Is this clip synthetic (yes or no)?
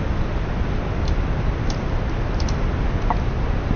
no